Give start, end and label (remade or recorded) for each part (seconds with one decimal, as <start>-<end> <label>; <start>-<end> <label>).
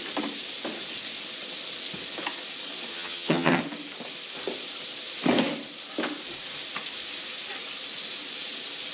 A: 0.0-2.9 recorded; 2.9-3.6 remade; 3.6-8.9 recorded